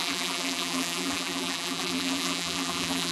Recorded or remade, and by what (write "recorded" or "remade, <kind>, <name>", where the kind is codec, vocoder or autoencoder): remade, vocoder, BigVGAN v2